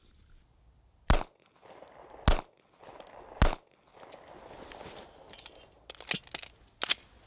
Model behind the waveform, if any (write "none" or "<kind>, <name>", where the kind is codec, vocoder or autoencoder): none